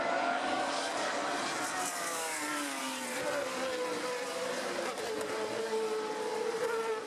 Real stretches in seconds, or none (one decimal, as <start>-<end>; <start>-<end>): 1.2-1.9; 2.8-7.1